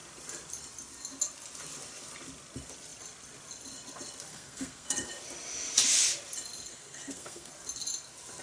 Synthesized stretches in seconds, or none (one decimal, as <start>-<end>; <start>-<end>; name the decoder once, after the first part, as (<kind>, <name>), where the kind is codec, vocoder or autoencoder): 4.3-5.1 (codec, SNAC); 6.7-7.5

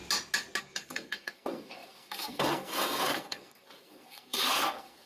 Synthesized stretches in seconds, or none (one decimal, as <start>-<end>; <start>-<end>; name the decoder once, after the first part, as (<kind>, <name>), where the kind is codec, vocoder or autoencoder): 0.6-5.1 (codec, SNAC)

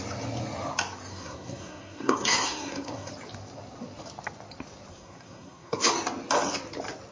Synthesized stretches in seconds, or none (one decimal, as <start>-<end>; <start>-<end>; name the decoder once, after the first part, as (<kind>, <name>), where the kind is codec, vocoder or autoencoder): 1.1-3.1 (codec, SNAC); 4.9-5.9

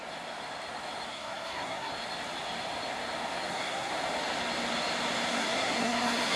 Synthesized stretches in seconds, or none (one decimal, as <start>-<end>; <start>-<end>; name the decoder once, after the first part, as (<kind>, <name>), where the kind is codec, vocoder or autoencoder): 1.1-1.9 (codec, SNAC); 3.5-3.9; 5.3-6.4